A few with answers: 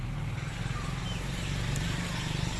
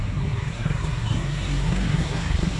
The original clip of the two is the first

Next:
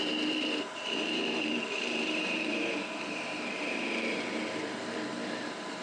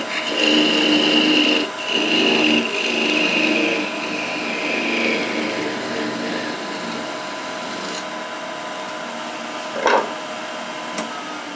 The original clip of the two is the second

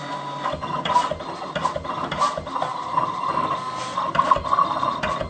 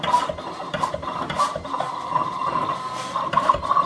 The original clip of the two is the first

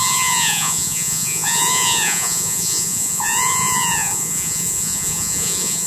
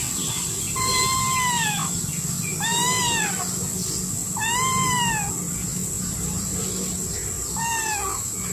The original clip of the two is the second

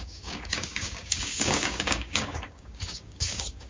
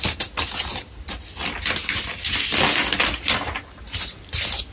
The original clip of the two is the second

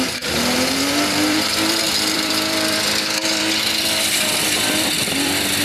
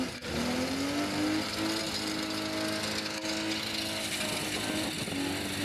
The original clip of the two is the second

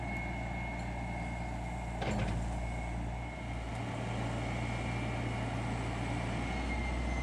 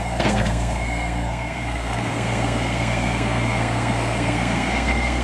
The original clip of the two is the first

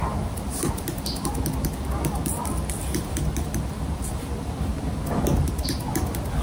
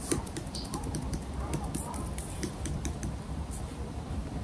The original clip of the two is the first